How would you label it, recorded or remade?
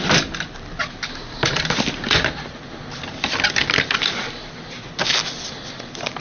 recorded